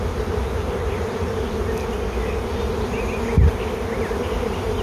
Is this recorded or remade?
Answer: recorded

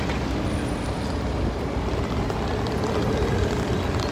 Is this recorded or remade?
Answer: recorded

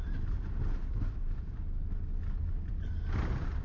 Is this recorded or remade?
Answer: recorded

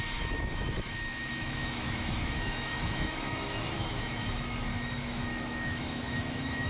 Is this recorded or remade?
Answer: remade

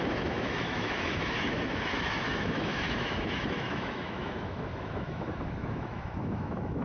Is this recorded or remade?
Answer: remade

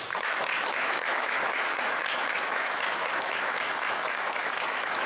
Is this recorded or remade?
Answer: remade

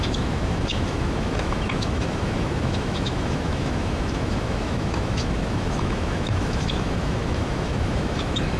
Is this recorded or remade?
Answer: remade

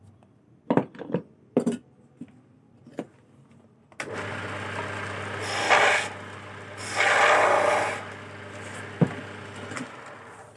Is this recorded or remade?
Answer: recorded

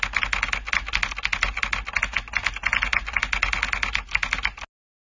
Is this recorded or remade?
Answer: recorded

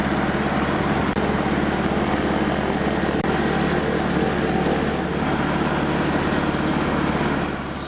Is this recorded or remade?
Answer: recorded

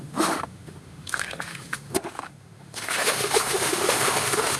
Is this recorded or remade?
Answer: remade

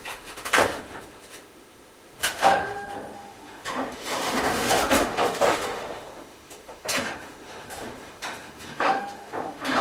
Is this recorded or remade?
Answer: remade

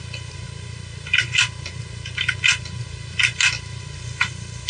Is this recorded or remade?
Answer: recorded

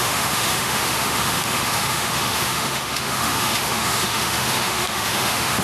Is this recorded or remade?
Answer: remade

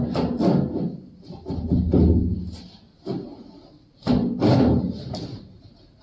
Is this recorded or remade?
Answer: recorded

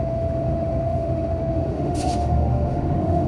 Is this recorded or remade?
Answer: remade